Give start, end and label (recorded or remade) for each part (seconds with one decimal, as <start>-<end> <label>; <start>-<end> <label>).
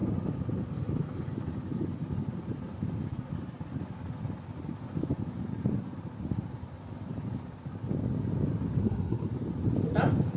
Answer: 0.0-8.8 recorded; 8.8-9.3 remade; 9.3-10.4 recorded